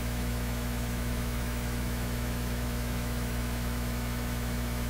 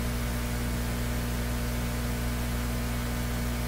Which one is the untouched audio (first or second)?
second